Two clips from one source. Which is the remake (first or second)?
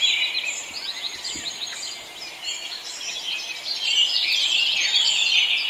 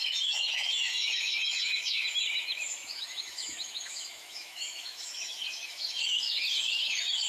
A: second